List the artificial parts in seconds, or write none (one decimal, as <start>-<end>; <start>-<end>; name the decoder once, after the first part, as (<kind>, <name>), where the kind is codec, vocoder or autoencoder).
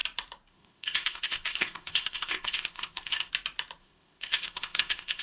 0.5-3.3 (codec, ZipCodec); 3.8-5.2